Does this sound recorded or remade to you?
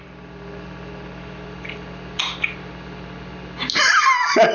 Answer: recorded